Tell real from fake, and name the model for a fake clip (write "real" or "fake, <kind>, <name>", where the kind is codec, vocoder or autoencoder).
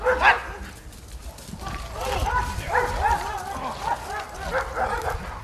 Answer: real